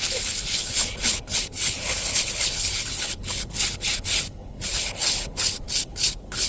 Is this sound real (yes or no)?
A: no